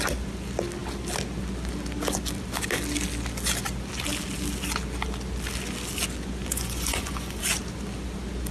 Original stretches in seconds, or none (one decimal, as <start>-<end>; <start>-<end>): 0.0-6.5; 7.4-8.5